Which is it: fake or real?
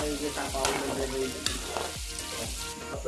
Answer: real